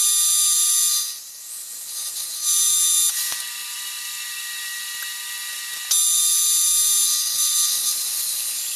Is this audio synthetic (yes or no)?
no